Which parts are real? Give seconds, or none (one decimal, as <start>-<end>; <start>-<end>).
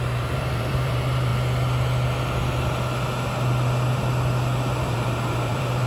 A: 1.3-4.8